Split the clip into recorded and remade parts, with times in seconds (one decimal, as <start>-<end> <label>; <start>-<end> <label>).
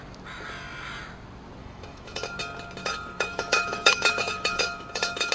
0.0-1.6 recorded; 1.6-2.4 remade; 2.4-2.8 recorded; 2.8-5.3 remade